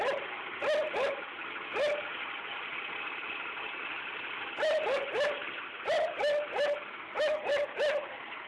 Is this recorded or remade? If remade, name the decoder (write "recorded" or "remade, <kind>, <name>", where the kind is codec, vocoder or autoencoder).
recorded